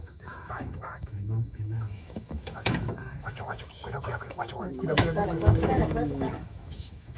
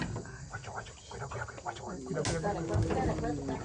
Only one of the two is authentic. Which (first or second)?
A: second